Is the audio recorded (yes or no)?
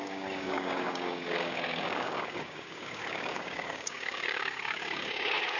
no